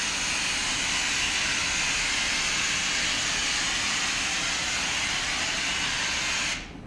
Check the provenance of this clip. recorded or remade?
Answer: recorded